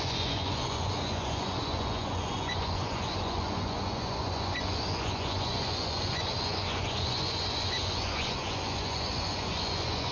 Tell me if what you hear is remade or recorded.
remade